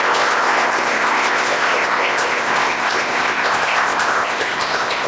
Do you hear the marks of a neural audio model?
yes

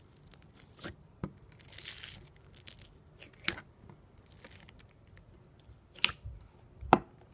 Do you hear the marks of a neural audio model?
no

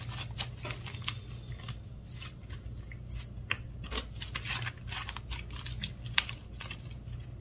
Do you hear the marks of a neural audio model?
no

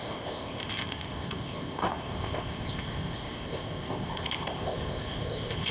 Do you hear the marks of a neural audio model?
yes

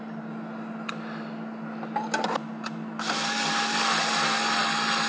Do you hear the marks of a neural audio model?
no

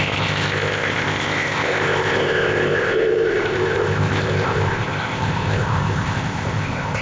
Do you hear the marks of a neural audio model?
yes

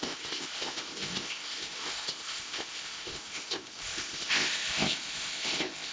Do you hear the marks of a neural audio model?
yes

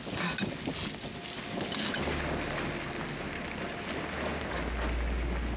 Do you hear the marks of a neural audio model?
no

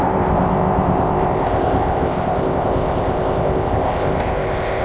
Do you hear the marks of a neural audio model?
yes